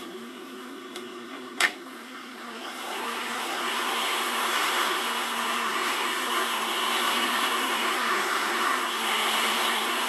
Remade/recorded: remade